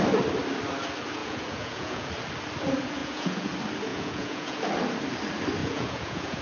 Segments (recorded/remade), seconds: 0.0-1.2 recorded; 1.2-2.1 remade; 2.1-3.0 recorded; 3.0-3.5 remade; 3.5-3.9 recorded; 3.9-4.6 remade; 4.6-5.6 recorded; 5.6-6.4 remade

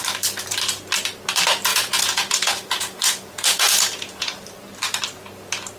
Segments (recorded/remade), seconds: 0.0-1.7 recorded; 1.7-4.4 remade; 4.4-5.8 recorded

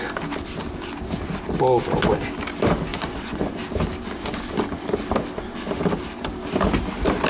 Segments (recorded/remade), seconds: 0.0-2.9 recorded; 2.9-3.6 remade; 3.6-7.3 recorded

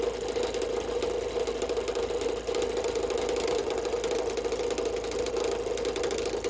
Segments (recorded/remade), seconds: 0.0-6.5 recorded